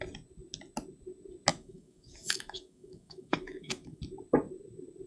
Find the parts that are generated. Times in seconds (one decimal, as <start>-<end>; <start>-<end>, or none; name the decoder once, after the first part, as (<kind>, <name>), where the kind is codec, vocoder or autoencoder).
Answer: 1.5-4.0 (autoencoder, DAC-VAE)